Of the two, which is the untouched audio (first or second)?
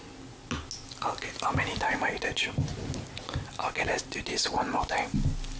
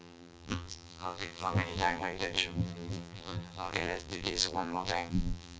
first